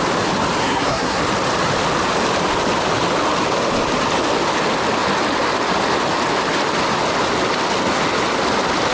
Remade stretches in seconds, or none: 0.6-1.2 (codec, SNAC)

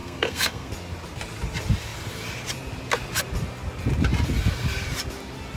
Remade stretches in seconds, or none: 0.0-0.7 (codec, SNAC)

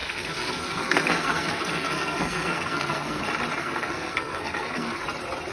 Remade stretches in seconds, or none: 0.0-3.2 (codec, SNAC); 3.6-5.0

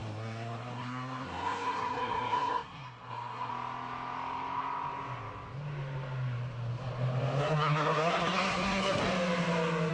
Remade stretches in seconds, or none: 0.0-3.5 (codec, SNAC); 7.4-9.0

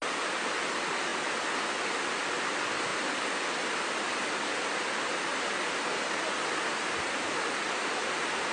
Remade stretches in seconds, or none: none

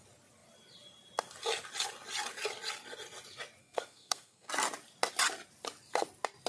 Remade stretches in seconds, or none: 3.6-4.5 (codec, SNAC)